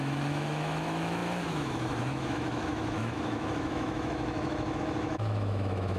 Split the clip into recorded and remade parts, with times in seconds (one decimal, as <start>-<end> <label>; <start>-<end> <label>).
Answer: 0.0-6.0 remade